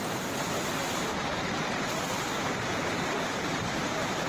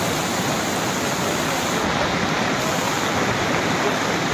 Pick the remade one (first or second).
first